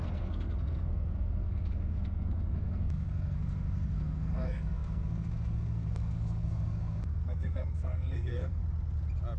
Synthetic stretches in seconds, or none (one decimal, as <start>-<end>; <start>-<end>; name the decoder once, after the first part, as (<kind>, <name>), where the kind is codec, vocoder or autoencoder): 0.0-8.6 (codec, SNAC)